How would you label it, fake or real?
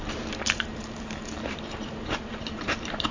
fake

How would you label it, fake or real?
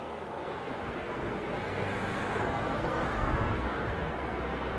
fake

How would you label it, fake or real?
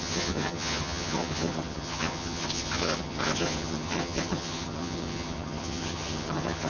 fake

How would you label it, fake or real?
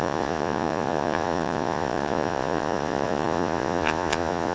fake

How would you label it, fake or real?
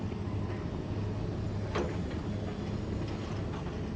real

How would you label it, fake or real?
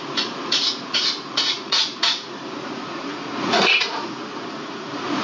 fake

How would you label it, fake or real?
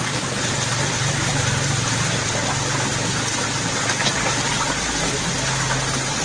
real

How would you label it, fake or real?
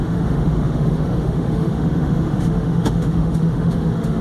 fake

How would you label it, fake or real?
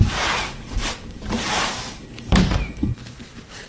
fake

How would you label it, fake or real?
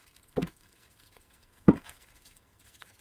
fake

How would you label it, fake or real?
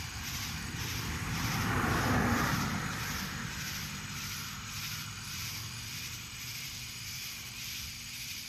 fake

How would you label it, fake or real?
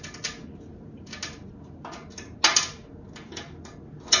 real